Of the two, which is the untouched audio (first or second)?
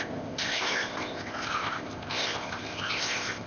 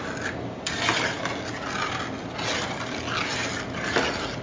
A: second